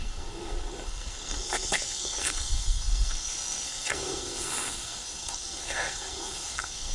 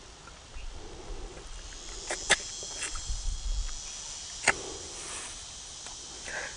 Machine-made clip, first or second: first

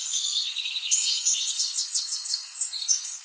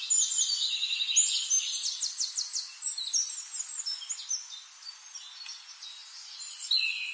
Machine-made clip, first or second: first